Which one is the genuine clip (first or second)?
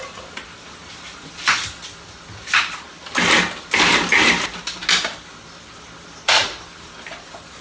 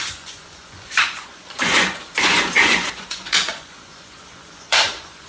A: first